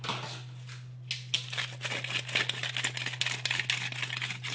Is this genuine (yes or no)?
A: yes